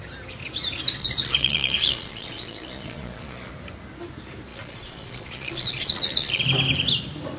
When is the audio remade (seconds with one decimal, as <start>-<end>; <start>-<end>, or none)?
1.0-3.5; 4.5-6.4